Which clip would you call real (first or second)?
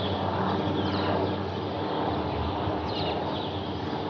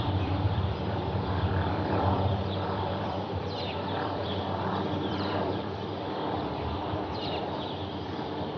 first